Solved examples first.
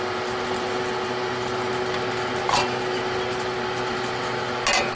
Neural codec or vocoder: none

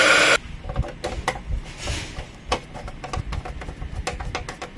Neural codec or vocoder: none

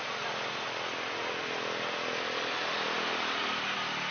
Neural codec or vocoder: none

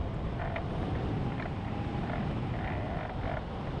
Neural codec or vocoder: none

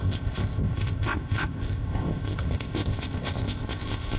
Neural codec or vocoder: codec, ZipCodec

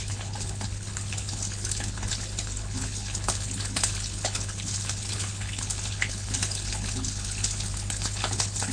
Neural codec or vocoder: codec, HILCodec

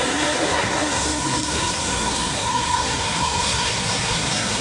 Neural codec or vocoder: codec, SNAC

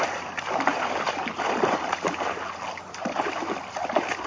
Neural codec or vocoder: none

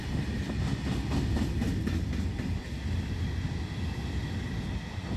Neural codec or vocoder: none